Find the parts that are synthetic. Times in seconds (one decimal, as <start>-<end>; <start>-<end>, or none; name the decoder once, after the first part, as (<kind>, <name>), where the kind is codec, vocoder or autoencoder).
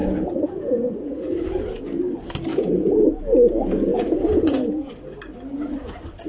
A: 0.0-1.8 (vocoder, Vocos); 2.5-3.2; 3.9-4.9